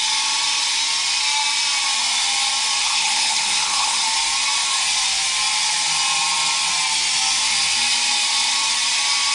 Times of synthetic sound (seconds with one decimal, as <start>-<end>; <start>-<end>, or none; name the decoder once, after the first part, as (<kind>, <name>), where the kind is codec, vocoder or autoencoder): 2.8-4.0 (codec, HILCodec)